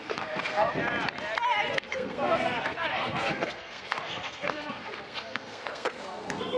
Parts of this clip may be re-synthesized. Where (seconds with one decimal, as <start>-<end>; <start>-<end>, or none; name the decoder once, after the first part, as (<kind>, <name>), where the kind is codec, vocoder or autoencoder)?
0.0-0.7 (codec, SNAC); 1.7-6.6